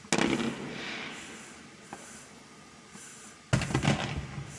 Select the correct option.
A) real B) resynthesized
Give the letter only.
A